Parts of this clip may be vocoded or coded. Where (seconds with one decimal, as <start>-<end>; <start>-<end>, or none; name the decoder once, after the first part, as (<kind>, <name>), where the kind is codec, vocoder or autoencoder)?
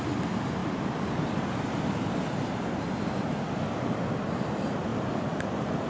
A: none